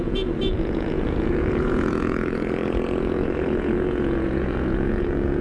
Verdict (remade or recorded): remade